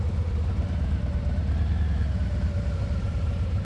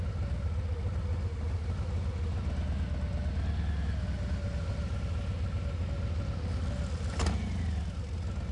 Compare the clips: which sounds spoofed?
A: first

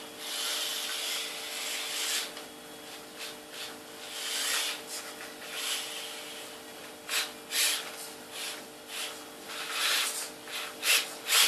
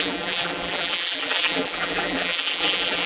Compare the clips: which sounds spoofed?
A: second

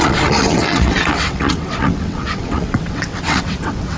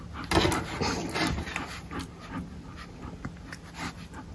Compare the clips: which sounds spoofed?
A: first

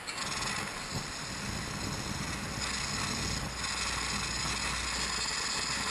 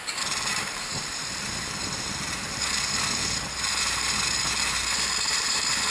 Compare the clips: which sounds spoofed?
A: second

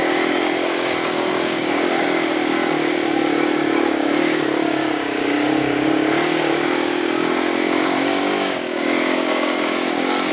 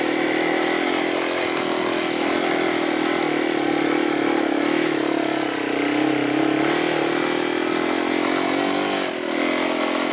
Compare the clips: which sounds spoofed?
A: first